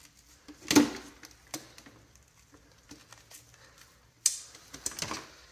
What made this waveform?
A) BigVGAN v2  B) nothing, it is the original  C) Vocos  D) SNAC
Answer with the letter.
B